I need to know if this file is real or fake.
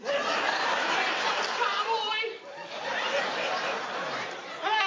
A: fake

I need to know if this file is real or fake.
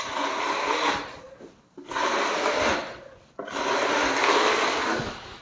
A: real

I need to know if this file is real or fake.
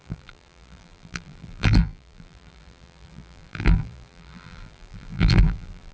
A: fake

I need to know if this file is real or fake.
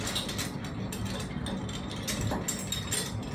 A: real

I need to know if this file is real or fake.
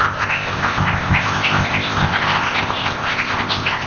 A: fake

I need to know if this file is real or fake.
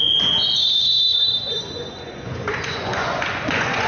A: fake